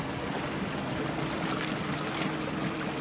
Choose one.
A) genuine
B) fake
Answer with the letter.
A